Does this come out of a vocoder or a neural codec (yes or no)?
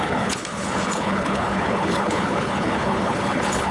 yes